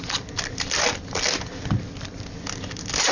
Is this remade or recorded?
remade